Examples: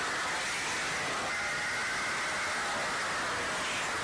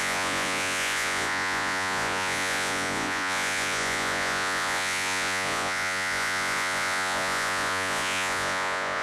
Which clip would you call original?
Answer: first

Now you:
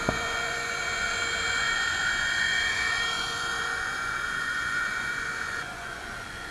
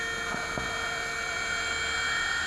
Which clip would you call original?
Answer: second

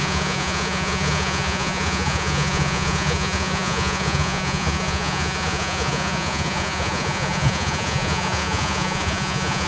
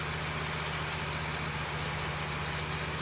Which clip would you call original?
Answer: second